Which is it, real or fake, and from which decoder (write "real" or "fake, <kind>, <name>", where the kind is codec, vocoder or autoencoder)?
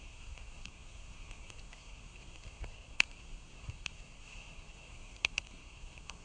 fake, codec, SNAC